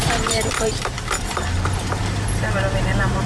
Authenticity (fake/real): fake